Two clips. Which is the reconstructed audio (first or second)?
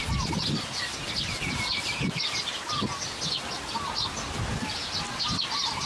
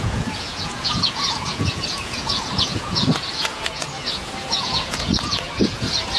second